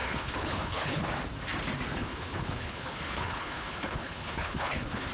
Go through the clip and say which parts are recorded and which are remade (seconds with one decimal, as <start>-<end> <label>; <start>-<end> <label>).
0.0-1.1 remade; 1.1-1.9 recorded; 1.9-5.1 remade

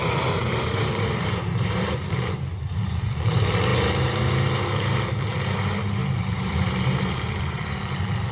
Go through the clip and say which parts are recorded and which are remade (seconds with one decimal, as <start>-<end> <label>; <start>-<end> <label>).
0.0-8.3 remade

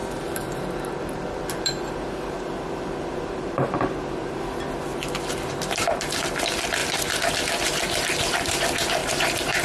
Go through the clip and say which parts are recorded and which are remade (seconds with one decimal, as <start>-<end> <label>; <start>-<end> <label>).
0.0-4.4 remade; 4.4-9.0 recorded; 9.0-9.6 remade

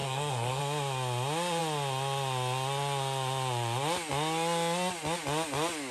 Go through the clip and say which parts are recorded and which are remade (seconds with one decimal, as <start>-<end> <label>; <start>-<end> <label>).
0.0-0.6 remade; 0.6-5.9 recorded

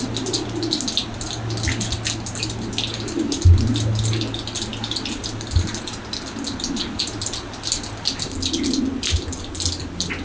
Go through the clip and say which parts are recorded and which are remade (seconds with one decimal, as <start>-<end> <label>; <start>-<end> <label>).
0.0-10.2 recorded